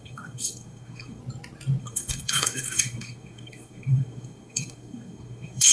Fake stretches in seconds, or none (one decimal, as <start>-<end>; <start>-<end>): 0.0-1.2; 1.8-5.7